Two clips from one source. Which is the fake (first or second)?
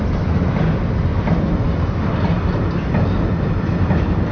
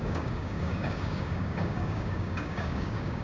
second